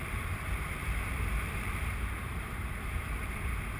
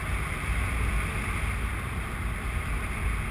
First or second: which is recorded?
second